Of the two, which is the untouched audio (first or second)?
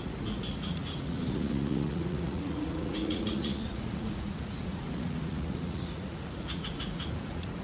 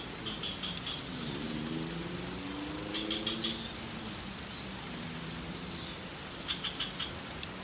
second